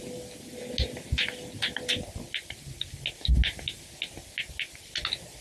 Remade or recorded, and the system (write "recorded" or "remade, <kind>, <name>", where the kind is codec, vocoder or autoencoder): recorded